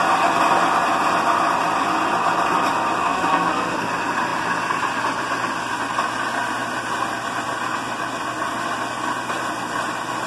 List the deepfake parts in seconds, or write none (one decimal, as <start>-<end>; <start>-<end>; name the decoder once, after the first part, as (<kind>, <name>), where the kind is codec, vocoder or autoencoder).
3.0-3.9 (codec, SNAC)